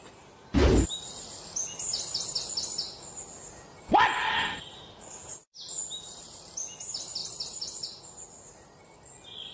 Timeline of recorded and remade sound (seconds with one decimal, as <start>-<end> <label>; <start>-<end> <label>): 0.0-9.5 recorded